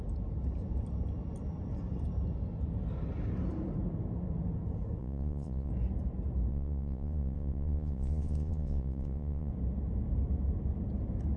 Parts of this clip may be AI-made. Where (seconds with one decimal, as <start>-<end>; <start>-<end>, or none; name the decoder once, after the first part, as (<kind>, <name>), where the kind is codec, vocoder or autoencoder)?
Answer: 5.0-5.7 (vocoder, Vocos); 6.5-9.5